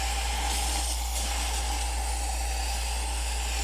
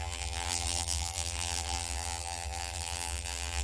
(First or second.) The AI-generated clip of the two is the second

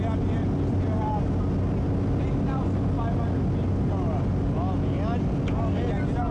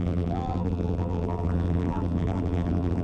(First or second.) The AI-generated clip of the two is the second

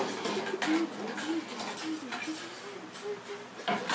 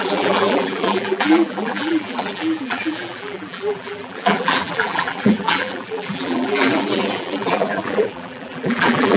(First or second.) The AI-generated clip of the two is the second